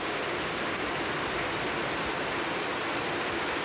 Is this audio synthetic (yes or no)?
no